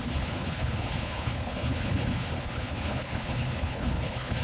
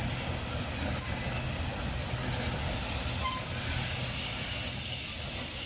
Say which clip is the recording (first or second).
second